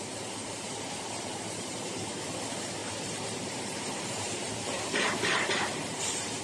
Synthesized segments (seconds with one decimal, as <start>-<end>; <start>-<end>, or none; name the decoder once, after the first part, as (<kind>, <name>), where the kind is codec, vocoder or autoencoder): 0.4-2.2 (vocoder, BigVGAN v2); 2.8-6.4